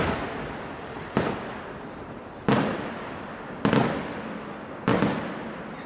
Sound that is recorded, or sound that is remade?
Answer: recorded